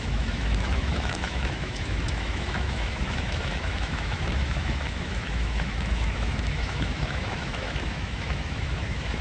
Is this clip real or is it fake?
fake